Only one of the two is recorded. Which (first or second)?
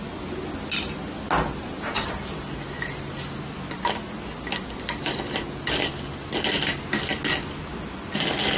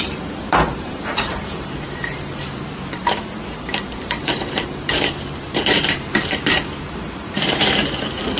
first